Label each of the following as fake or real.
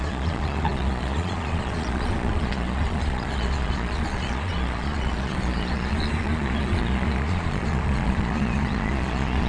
fake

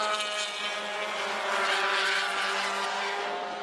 real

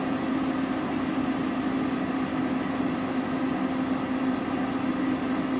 real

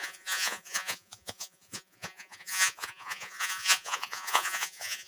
fake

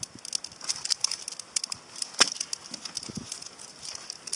real